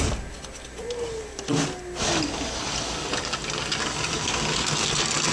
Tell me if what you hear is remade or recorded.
recorded